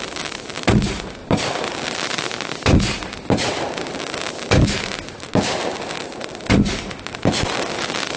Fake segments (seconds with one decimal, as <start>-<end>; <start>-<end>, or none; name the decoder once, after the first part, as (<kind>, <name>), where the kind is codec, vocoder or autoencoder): none